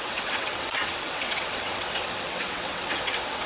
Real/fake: fake